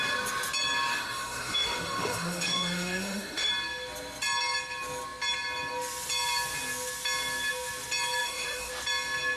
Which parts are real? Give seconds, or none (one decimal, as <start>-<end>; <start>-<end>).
0.0-0.9; 3.5-8.2; 8.7-9.4